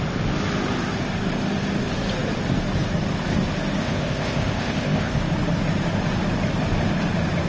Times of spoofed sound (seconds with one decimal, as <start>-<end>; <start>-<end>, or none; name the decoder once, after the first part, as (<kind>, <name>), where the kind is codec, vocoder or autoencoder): 3.8-5.2 (codec, ZipCodec)